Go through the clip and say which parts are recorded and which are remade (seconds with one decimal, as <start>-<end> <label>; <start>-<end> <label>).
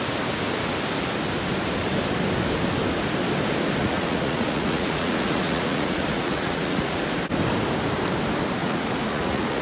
0.0-3.8 recorded; 3.8-7.0 remade; 7.0-8.6 recorded; 8.6-9.6 remade